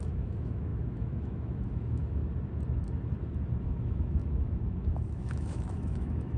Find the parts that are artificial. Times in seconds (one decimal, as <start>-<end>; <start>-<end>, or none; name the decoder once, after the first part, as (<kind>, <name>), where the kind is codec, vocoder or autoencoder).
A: 0.0-2.2 (autoencoder, DAC-VAE); 3.6-6.4